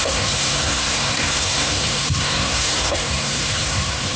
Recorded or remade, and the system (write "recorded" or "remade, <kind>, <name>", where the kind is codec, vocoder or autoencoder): remade, codec, SNAC